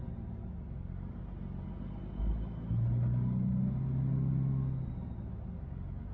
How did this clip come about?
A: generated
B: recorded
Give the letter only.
B